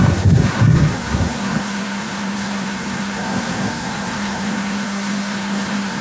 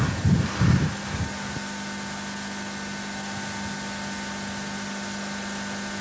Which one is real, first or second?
second